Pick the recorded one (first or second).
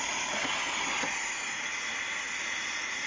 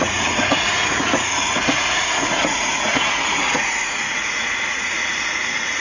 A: first